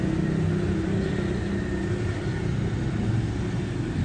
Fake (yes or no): no